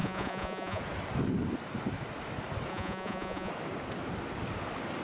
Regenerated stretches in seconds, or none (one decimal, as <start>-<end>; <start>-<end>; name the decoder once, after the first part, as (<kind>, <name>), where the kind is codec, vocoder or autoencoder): 0.0-0.8 (vocoder, Vocos); 2.7-3.5